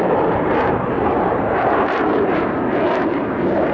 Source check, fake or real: fake